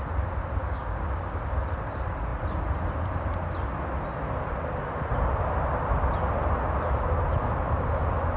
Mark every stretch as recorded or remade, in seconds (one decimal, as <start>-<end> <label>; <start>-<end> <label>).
0.0-0.6 recorded; 0.6-1.4 remade; 1.4-8.4 recorded